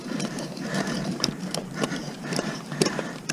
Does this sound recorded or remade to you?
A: remade